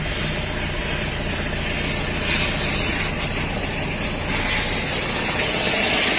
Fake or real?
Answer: real